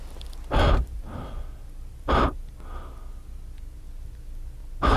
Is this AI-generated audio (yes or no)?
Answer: no